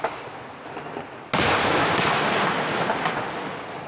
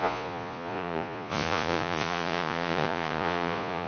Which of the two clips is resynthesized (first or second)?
second